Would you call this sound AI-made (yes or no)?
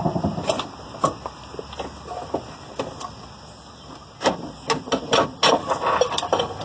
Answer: no